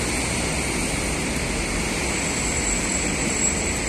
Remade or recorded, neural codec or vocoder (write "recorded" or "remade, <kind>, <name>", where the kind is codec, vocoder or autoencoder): recorded